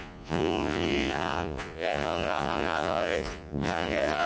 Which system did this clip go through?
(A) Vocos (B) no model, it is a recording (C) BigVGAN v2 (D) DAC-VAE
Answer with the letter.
A